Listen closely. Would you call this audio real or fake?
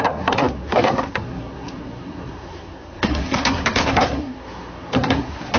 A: fake